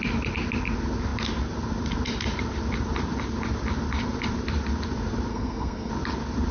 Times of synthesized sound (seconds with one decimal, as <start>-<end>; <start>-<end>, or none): 5.3-5.9

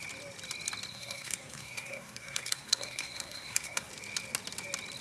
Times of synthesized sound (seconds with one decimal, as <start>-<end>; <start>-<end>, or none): 0.9-3.9